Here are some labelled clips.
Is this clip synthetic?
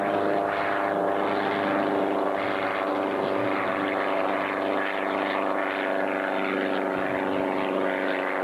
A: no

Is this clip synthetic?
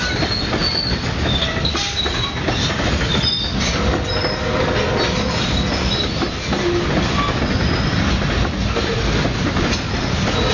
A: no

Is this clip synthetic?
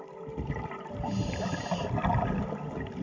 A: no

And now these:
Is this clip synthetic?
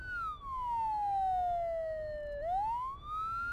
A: no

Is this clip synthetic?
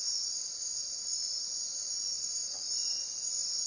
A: yes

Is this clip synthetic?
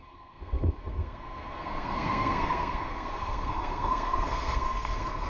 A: yes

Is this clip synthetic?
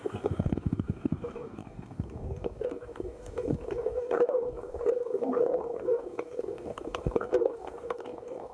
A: yes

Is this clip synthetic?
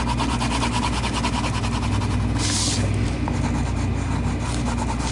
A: no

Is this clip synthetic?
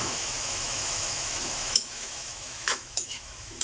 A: yes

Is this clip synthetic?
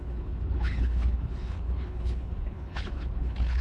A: yes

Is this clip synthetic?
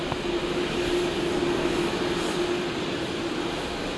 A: no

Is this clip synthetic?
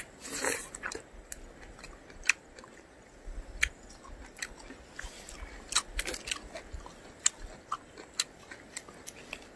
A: no